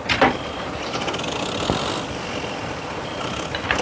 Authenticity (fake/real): real